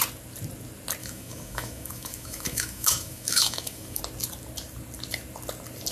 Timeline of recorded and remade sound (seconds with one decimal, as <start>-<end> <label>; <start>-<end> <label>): 0.0-1.0 recorded; 1.0-4.0 remade; 4.0-5.9 recorded